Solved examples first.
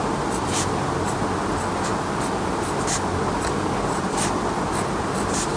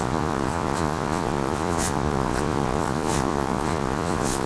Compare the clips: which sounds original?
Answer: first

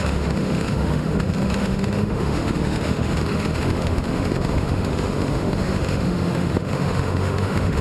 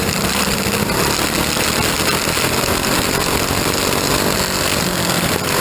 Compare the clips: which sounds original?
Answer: second